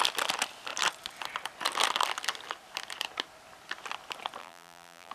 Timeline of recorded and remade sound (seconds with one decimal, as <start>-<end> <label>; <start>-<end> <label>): 0.0-4.4 recorded; 4.4-5.1 remade